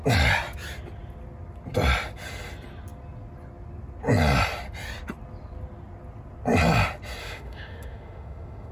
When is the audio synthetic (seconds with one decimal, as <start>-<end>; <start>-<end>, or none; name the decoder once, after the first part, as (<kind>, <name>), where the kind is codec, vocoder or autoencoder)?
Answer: 7.2-8.7 (autoencoder, DAC-VAE)